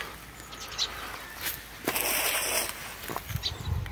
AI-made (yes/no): no